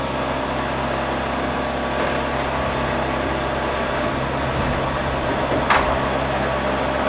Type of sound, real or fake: real